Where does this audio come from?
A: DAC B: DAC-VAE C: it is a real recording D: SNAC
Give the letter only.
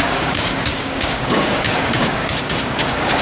A